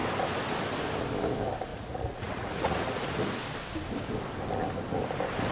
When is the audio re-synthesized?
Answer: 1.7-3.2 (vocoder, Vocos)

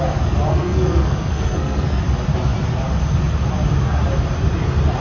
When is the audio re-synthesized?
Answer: 0.5-2.0 (codec, SNAC)